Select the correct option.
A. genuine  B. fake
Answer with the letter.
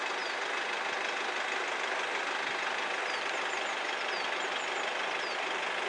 A